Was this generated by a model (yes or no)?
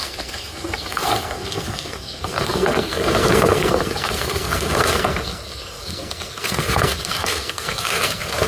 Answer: yes